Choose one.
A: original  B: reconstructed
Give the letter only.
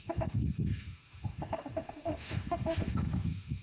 B